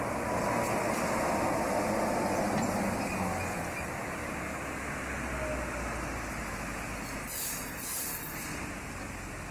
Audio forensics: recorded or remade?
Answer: recorded